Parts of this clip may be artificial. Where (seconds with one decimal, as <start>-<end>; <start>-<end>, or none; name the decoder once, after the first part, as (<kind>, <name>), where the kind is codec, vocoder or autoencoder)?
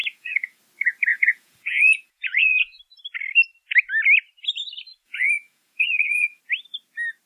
0.0-0.6 (vocoder, Vocos); 1.1-2.8; 4.9-6.4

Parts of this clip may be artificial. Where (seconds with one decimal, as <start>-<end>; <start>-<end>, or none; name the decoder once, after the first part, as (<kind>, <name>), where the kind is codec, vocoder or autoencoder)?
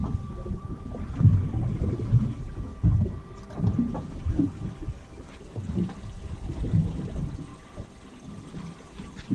0.0-0.6 (vocoder, BigVGAN v2); 7.5-8.1